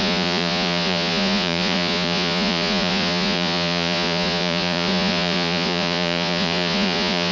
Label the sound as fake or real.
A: fake